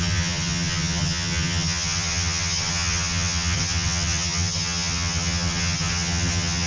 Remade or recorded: remade